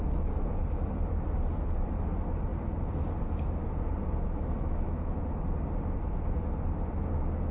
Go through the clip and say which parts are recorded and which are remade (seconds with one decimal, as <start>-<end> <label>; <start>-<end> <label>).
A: 0.0-7.5 recorded